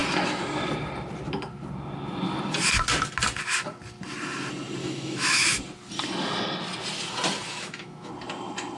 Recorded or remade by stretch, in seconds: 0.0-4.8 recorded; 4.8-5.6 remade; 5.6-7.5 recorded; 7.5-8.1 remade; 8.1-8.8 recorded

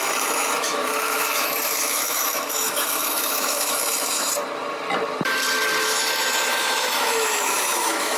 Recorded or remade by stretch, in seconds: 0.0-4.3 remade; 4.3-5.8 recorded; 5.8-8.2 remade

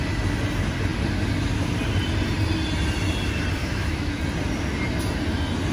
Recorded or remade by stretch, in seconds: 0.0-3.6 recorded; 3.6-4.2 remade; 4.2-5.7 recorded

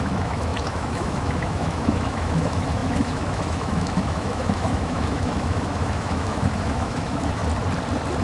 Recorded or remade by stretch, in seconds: 0.0-7.4 remade; 7.4-8.2 recorded

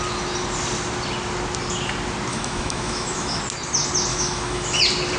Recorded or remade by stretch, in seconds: 0.0-2.3 recorded; 2.3-3.4 remade; 3.4-4.1 recorded; 4.1-4.8 remade; 4.8-5.2 recorded

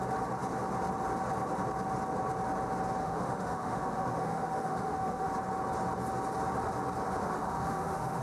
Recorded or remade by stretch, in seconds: 0.0-3.0 recorded; 3.0-5.3 remade; 5.3-7.2 recorded; 7.2-8.2 remade

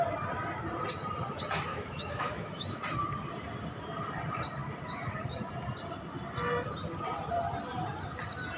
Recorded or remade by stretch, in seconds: 0.0-1.7 recorded; 1.7-2.8 remade; 2.8-8.6 recorded

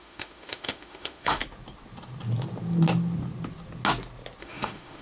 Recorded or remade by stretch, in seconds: 0.0-1.4 remade; 1.4-4.4 recorded; 4.4-5.0 remade